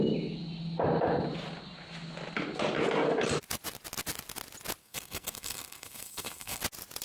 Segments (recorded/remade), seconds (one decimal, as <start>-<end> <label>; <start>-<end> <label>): 0.0-4.8 recorded; 4.8-6.6 remade; 6.6-7.0 recorded